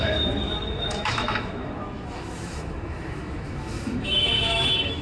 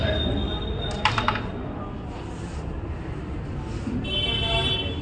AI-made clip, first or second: first